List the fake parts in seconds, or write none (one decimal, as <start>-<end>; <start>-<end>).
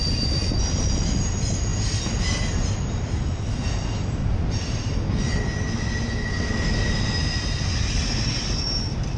none